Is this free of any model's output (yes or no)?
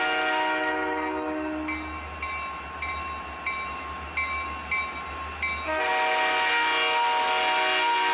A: yes